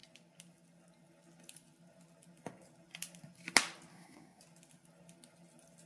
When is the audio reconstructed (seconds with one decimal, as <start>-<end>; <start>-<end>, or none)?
3.9-4.4

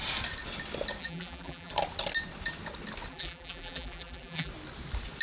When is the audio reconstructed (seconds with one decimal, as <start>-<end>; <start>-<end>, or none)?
1.0-1.7; 3.1-4.5

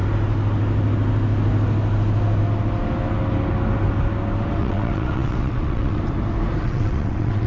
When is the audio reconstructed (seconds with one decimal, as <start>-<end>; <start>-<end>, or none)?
4.6-6.0; 6.6-7.5

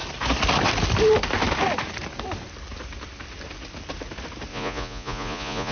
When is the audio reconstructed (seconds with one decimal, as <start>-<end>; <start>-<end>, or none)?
4.5-5.7

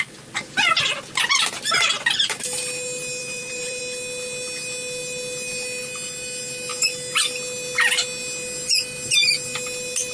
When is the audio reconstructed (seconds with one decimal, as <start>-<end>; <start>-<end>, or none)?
3.2-3.8

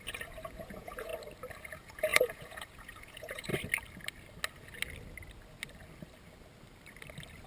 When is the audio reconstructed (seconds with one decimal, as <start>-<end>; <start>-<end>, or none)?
0.0-1.1; 1.7-3.5

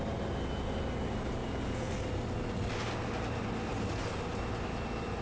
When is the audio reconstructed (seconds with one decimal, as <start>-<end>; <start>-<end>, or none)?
1.4-1.9